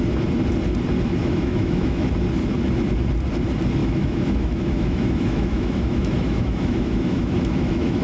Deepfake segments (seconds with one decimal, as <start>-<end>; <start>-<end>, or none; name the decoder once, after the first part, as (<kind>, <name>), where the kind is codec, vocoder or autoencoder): 1.2-2.1 (autoencoder, DAC-VAE); 3.8-8.0